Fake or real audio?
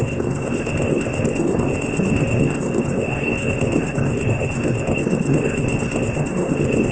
fake